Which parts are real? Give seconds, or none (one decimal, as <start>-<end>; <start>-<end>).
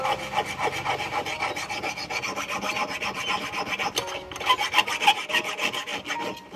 0.0-6.6